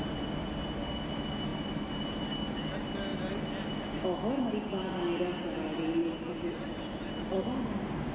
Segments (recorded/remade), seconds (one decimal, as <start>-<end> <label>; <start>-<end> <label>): 0.0-6.0 recorded; 6.0-7.1 remade; 7.1-8.1 recorded